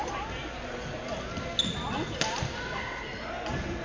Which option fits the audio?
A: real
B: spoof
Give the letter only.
A